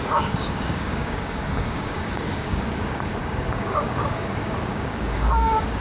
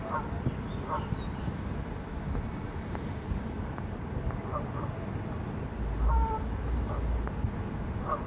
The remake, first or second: first